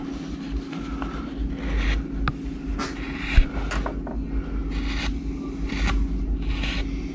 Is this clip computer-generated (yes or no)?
no